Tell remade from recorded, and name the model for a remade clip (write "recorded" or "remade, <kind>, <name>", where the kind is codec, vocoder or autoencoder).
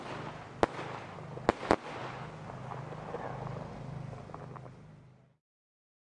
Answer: recorded